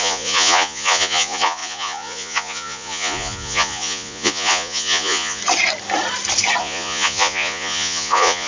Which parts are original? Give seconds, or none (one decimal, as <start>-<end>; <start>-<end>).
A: 5.4-6.6